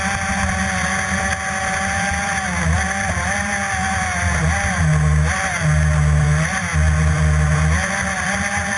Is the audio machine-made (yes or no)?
no